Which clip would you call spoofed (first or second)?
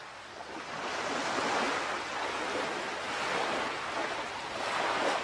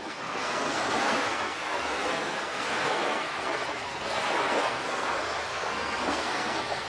second